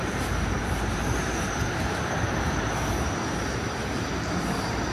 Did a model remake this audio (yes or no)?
yes